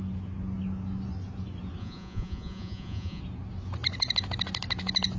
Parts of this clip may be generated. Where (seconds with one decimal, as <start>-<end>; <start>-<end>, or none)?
1.8-3.2

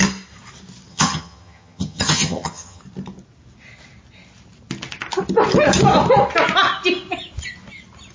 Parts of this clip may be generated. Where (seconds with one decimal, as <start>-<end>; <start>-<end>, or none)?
0.9-2.8

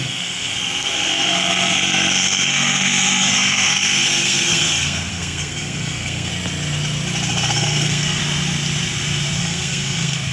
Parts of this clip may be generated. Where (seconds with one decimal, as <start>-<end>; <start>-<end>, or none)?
0.0-6.3; 7.3-8.2; 9.4-10.3

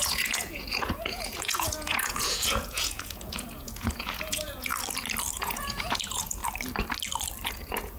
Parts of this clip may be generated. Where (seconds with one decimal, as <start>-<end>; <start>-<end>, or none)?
0.0-4.7; 5.3-6.4; 7.5-8.0

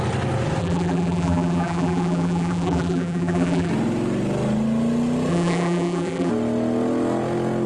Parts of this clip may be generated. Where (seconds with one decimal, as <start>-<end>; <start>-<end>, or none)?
0.6-3.7; 5.3-6.3

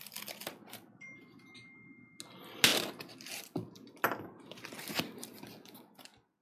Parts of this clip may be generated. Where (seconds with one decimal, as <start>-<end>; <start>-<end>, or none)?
2.7-4.7

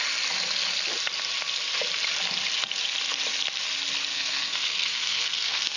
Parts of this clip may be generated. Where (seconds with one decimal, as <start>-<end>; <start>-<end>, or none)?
4.1-5.8

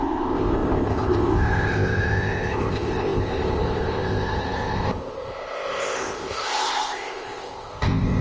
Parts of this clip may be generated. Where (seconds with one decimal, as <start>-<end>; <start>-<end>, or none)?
0.0-8.2